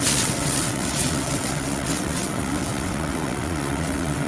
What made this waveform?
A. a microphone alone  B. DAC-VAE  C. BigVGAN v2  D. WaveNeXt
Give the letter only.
D